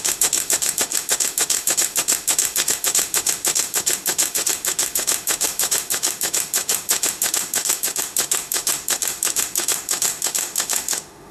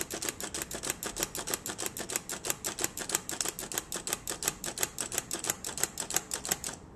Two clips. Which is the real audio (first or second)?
second